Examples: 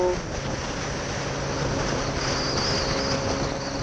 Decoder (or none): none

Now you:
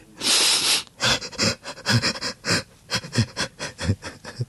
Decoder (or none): none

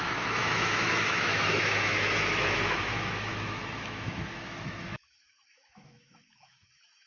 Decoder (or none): autoencoder, DAC-VAE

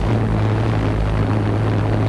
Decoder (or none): none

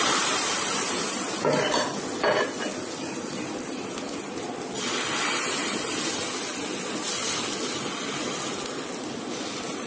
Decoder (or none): none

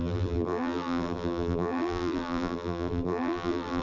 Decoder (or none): vocoder, BigVGAN v2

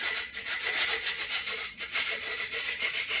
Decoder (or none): vocoder, Vocos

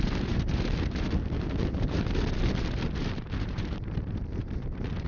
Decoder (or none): vocoder, BigVGAN v2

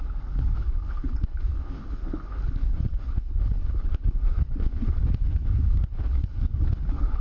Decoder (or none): codec, HILCodec